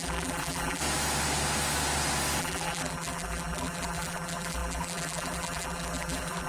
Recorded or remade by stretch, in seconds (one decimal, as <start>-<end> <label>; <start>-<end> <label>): 0.0-0.8 remade; 0.8-2.4 recorded; 2.4-6.5 remade